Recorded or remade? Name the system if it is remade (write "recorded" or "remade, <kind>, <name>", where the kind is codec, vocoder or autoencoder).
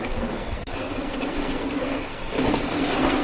remade, codec, SNAC